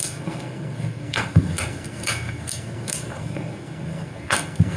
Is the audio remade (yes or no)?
yes